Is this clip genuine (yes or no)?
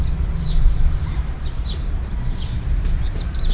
no